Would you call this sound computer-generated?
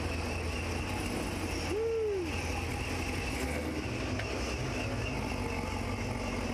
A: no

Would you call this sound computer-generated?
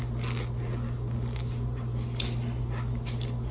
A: no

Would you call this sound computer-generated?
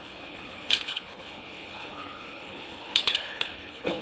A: yes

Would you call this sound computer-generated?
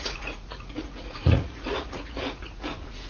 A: yes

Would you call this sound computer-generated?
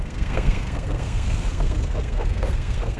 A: yes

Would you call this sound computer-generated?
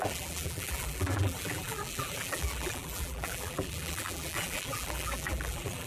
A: yes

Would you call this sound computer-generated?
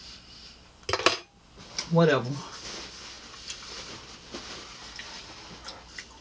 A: no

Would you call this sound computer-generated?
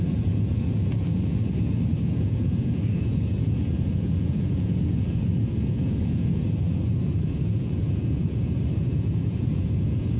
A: yes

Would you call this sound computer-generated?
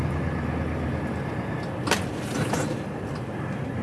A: no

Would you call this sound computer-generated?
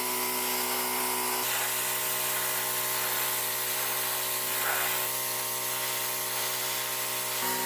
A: no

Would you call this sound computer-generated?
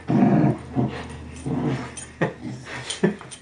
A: no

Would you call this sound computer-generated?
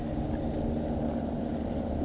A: no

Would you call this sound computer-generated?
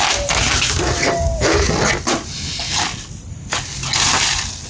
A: no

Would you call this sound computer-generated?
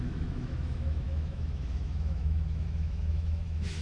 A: yes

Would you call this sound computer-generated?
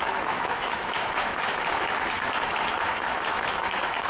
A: yes